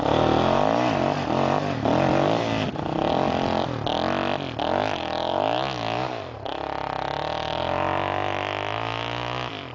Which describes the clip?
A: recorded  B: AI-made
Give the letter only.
A